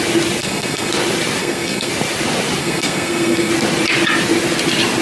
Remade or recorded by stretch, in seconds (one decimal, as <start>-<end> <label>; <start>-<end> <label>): 0.0-0.4 recorded; 0.4-0.9 remade; 0.9-1.4 recorded; 1.4-1.9 remade; 1.9-2.6 recorded; 2.6-3.5 remade; 3.5-5.0 recorded